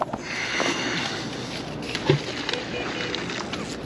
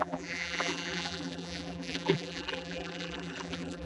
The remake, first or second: second